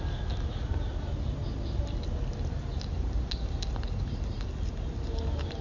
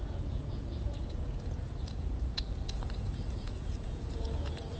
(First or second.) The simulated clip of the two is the second